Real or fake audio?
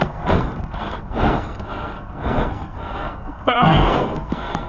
fake